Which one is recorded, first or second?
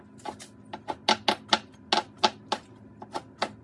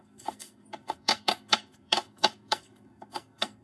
first